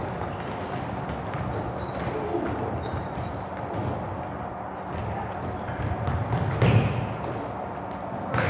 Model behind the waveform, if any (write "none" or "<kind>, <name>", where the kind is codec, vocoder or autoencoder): none